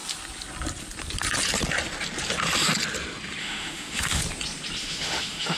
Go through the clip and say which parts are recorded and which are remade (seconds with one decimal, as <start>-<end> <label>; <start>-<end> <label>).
0.0-3.4 recorded; 3.4-4.2 remade; 4.2-4.8 recorded; 4.8-5.6 remade